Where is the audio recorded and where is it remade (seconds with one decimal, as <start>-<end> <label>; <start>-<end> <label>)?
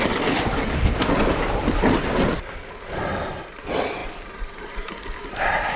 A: 0.0-5.8 recorded